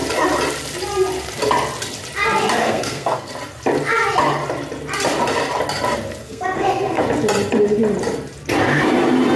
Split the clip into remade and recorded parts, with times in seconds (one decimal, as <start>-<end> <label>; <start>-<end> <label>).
0.0-2.6 recorded; 2.6-3.3 remade; 3.3-6.2 recorded; 6.2-7.0 remade; 7.0-9.4 recorded